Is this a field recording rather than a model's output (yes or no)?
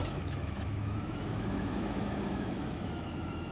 no